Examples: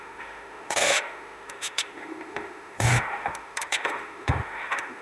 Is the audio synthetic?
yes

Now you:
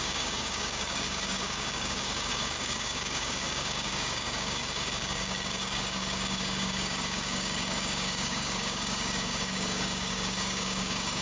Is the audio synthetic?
yes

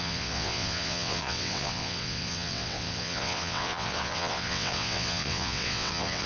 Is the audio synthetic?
yes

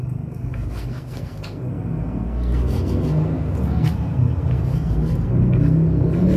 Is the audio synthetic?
yes